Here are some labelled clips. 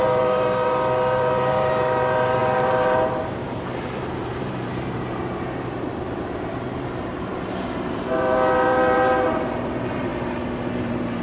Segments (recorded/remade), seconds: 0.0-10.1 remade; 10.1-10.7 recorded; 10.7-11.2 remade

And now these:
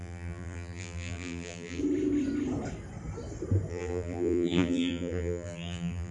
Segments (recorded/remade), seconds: 0.0-1.8 remade; 1.8-3.7 recorded; 3.7-6.1 remade